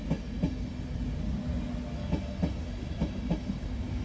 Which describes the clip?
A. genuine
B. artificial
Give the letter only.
A